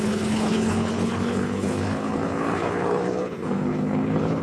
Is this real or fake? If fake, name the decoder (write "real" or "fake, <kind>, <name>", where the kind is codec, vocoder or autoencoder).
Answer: fake, codec, HILCodec